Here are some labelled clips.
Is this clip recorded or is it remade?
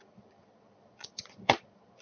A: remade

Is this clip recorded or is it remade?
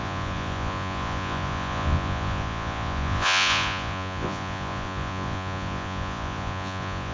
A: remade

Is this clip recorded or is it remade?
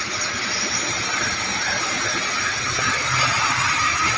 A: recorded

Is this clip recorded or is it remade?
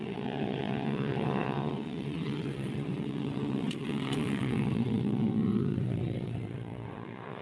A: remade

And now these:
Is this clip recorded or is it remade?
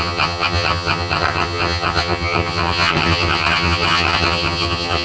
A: remade